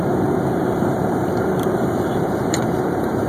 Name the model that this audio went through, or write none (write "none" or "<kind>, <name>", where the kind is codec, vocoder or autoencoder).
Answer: vocoder, BigVGAN v2